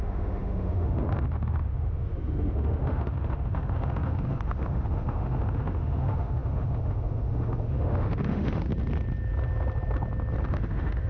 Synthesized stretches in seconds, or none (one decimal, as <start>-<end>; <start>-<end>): 0.0-8.7; 10.5-11.1